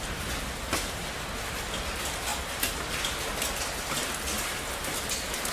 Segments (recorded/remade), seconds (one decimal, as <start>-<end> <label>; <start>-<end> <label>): 0.0-5.5 recorded